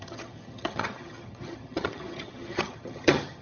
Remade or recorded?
remade